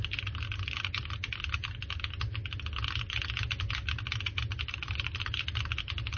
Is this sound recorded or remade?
recorded